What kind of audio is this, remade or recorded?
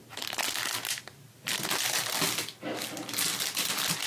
recorded